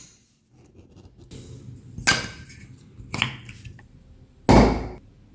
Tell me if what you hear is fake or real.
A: real